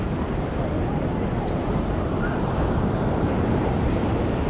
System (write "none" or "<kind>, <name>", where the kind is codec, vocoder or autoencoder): none